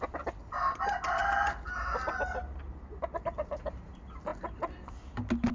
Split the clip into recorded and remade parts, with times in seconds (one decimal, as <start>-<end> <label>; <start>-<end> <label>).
0.0-5.5 recorded